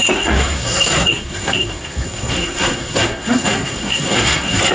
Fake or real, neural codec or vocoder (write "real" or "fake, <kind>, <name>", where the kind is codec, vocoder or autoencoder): fake, codec, SNAC